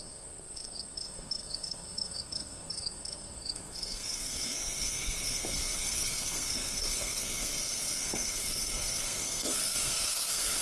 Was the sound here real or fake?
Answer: fake